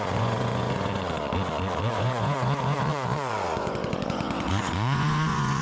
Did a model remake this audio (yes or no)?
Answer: yes